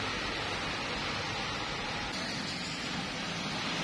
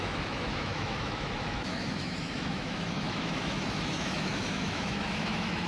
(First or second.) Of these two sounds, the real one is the first